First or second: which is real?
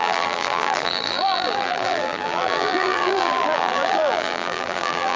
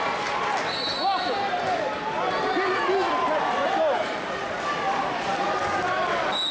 second